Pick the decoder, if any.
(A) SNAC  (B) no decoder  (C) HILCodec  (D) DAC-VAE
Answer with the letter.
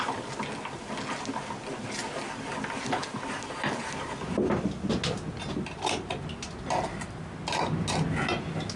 B